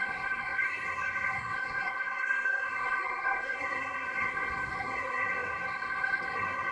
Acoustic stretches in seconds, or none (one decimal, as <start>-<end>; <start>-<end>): none